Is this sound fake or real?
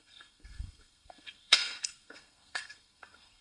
fake